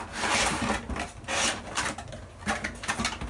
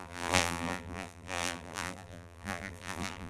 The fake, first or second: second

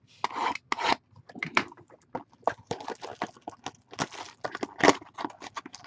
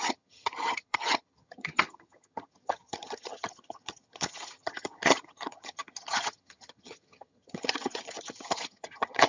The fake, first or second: second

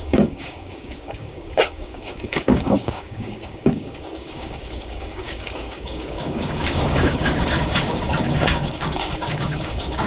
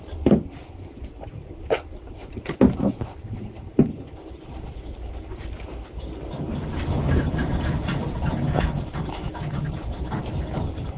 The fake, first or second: first